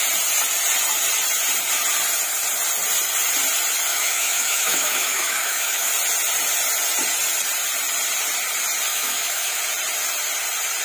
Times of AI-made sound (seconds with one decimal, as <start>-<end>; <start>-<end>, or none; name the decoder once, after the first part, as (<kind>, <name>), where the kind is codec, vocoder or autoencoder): 3.9-5.9 (autoencoder, DAC-VAE); 8.9-9.6